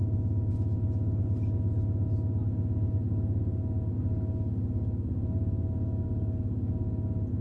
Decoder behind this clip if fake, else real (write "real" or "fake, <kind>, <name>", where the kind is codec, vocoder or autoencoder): real